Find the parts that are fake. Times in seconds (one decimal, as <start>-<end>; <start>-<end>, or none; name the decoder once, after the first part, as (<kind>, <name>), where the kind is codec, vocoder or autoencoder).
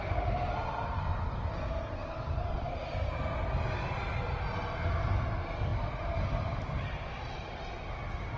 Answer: 2.0-2.9 (vocoder, BigVGAN v2); 5.7-7.0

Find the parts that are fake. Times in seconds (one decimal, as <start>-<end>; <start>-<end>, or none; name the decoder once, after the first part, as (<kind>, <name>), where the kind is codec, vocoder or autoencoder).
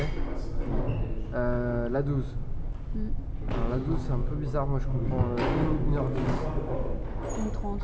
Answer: none